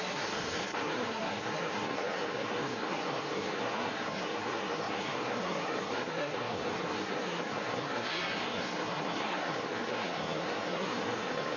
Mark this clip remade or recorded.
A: remade